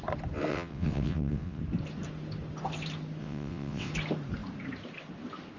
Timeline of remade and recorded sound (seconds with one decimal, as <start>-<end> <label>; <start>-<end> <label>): 0.0-0.5 recorded; 0.5-1.6 remade; 1.6-3.2 recorded; 3.2-3.9 remade; 3.9-5.6 recorded